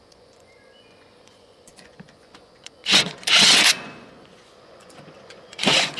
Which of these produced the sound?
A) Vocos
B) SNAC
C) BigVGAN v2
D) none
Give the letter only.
A